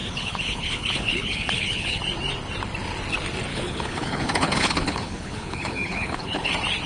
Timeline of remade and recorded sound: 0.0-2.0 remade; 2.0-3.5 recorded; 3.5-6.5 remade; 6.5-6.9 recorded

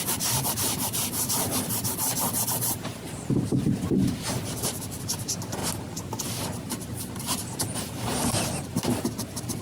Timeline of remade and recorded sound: 0.0-5.6 remade; 5.6-6.4 recorded; 6.4-9.6 remade

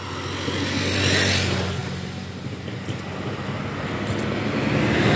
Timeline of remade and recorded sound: 0.0-5.2 recorded